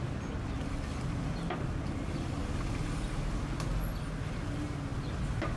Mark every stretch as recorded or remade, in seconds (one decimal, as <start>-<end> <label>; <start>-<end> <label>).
0.0-5.6 recorded